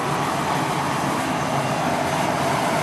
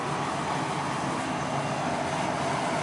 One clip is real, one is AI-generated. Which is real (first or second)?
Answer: second